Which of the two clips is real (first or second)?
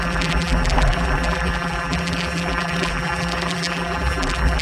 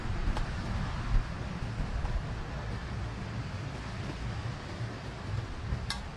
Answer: second